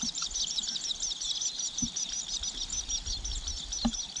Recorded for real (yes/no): yes